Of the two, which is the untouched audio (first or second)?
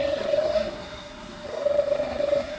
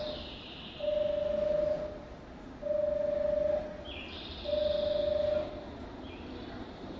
second